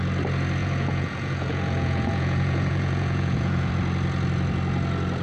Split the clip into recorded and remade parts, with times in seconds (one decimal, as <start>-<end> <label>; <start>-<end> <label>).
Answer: 0.0-0.6 recorded; 0.6-3.7 remade; 3.7-5.2 recorded